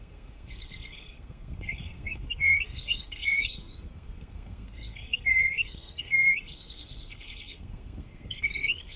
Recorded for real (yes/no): no